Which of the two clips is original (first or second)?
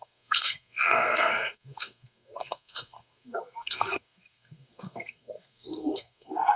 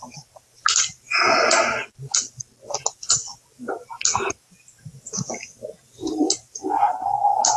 second